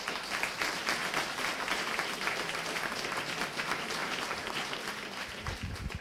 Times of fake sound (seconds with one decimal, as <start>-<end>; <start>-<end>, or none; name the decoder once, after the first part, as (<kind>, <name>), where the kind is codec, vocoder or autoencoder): 4.0-4.7 (vocoder, BigVGAN v2); 5.2-6.0